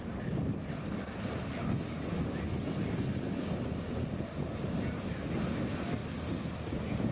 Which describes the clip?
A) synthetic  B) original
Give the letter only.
B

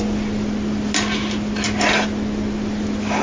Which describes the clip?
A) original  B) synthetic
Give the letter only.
A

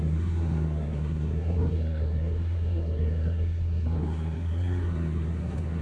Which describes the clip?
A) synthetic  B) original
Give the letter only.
A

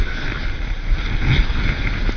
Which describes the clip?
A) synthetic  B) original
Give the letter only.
B